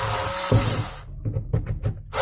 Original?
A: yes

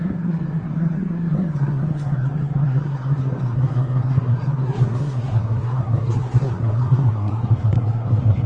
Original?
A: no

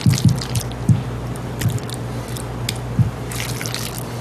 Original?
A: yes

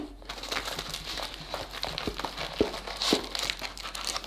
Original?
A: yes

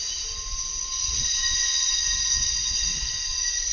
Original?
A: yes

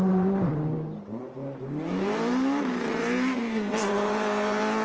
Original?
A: no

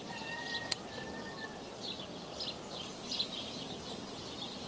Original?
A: yes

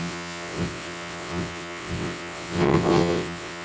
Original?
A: no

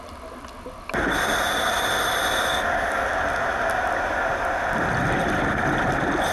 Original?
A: yes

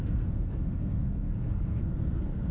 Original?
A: no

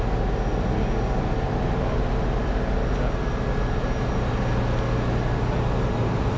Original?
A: yes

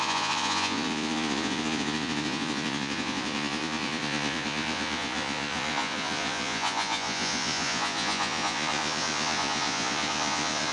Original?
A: no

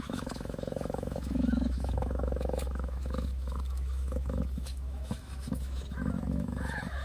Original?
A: no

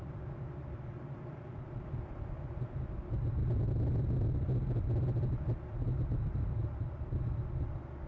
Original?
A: yes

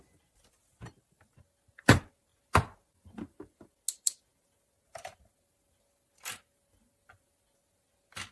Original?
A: yes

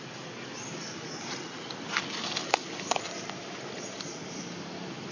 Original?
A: yes